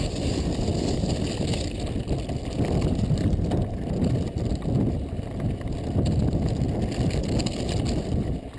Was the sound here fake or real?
real